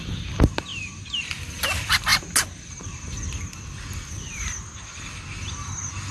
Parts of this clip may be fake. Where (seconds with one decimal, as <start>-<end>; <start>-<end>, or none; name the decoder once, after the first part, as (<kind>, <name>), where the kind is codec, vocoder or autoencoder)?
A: none